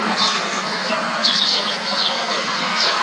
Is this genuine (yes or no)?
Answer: no